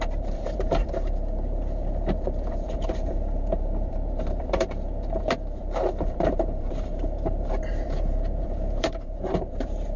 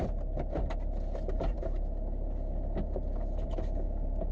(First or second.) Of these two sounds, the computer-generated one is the first